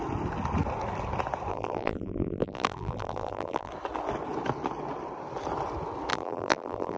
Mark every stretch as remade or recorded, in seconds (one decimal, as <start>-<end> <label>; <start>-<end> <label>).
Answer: 0.0-1.5 recorded; 1.5-3.7 remade; 3.7-6.1 recorded; 6.1-7.0 remade